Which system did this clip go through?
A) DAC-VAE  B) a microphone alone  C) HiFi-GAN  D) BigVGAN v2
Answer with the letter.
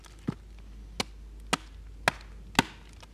B